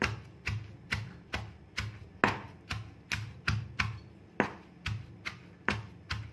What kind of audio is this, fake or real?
real